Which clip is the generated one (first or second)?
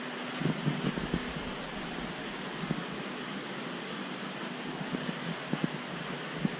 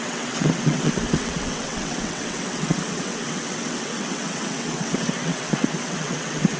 second